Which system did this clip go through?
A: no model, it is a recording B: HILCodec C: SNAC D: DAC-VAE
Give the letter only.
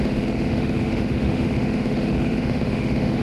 D